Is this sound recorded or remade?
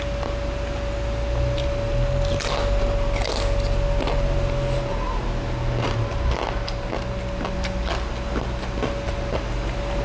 recorded